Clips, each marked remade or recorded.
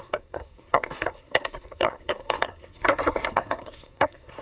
remade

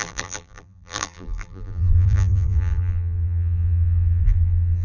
remade